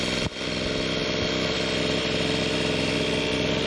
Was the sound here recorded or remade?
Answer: recorded